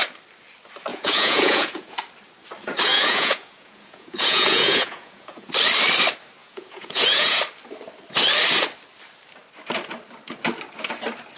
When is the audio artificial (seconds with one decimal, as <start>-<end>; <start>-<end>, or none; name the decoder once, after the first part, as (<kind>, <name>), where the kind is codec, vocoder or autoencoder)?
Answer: 0.9-2.0 (vocoder, Vocos); 2.9-5.5; 6.4-7.4